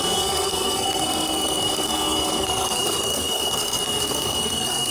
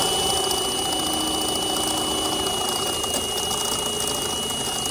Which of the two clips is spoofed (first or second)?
first